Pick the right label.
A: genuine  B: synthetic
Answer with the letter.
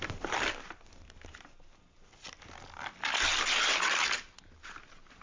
A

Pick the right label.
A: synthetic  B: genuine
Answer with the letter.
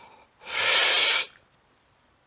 B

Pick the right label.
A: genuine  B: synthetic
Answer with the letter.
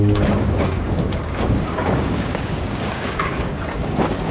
B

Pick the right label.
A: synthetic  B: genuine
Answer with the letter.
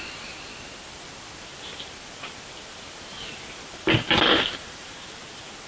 B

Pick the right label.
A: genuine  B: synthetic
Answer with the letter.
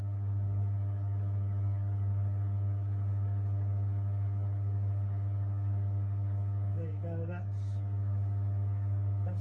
B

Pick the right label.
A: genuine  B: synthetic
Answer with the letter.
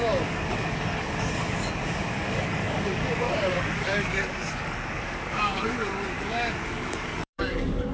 B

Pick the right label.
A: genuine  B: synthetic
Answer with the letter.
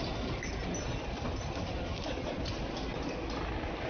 A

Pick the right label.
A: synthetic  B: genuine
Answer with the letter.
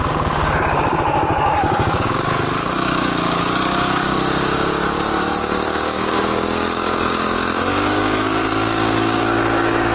A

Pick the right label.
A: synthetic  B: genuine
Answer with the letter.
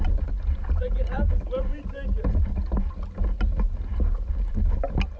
B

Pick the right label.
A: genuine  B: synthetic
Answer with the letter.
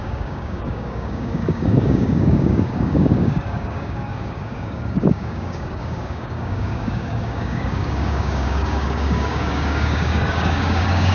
B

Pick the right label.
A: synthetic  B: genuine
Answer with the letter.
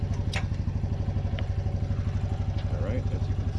B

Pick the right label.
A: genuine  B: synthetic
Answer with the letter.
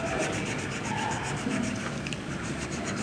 B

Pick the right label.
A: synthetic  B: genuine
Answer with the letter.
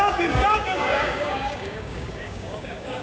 A